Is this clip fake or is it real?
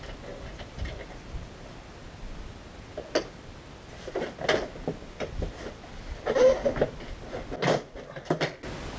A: real